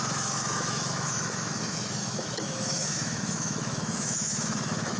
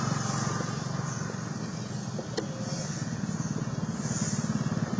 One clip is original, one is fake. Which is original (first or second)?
second